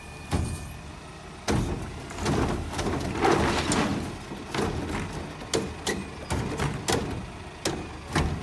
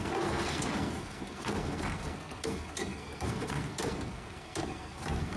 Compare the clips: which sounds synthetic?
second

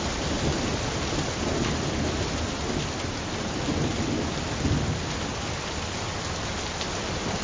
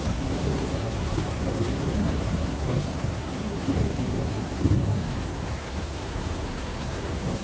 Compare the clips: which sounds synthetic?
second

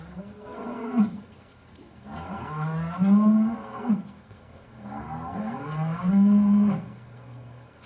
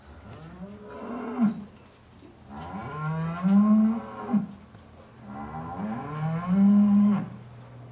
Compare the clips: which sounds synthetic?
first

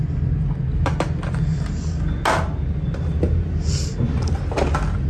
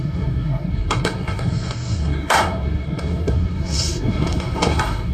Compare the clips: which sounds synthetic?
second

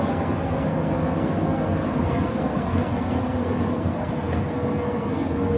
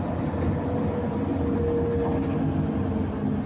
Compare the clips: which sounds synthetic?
first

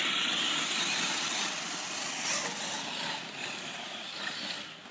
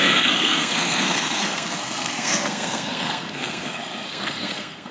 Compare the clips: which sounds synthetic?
second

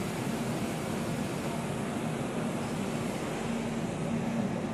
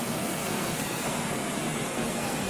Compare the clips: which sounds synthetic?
second